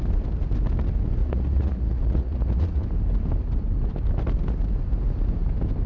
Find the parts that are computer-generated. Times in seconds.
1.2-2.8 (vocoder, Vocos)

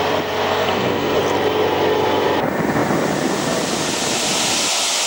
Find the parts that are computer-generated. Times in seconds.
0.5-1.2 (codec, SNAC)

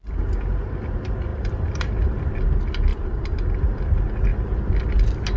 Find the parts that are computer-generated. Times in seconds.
1.3-2.4 (vocoder, BigVGAN v2); 2.9-3.5

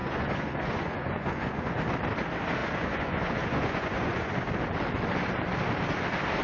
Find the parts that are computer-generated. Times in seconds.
0.0-1.8 (vocoder, Vocos); 2.6-4.4